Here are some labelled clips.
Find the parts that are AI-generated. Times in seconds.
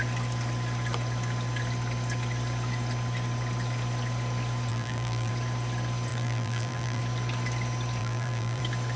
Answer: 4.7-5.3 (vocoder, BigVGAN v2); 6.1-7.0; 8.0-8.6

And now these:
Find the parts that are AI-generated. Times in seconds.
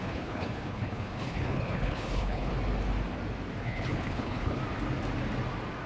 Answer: 0.0-2.5 (codec, HILCodec); 3.6-4.6